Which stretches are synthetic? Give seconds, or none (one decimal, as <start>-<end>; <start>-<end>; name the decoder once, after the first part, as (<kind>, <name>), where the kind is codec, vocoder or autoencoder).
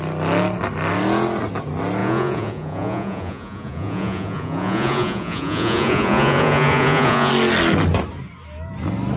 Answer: 2.0-7.3 (vocoder, Vocos)